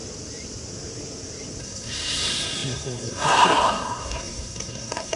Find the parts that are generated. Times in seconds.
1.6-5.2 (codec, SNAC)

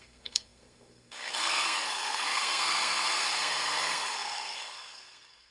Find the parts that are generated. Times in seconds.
0.0-5.5 (codec, SNAC)

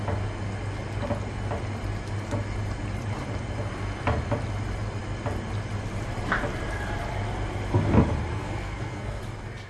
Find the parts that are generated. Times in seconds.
8.3-9.2 (codec, SNAC)

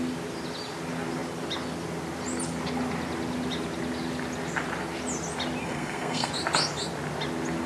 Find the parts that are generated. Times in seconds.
5.6-6.3 (codec, SNAC)

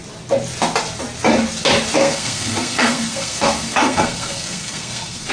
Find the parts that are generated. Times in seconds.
2.0-5.3 (codec, SNAC)